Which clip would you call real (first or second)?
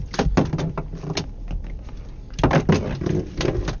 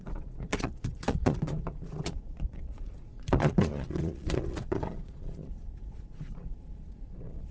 first